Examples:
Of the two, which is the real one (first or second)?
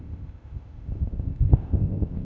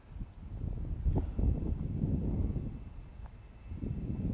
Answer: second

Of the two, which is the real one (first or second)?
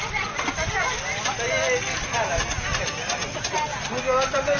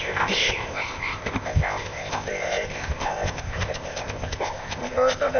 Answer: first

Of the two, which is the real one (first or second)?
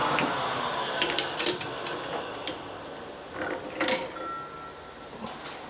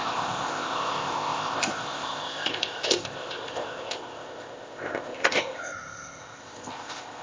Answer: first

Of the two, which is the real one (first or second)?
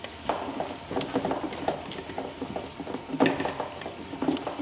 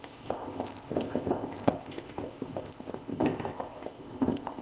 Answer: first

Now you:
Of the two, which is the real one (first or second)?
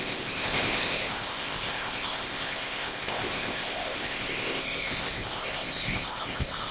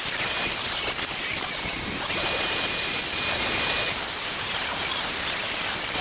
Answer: second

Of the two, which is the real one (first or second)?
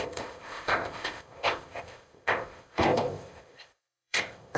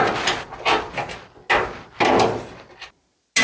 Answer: second